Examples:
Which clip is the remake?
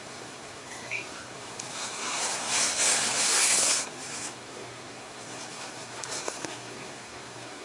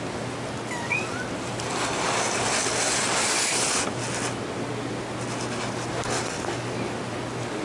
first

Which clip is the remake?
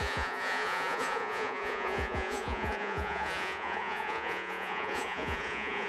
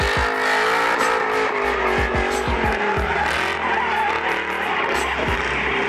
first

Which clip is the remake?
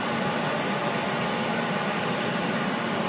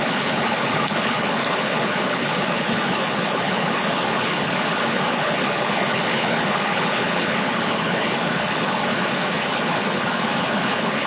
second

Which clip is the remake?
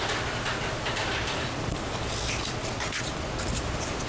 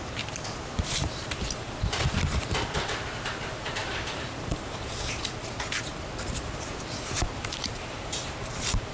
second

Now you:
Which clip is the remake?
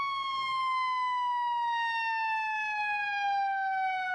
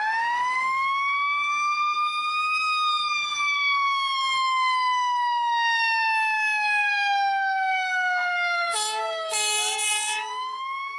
second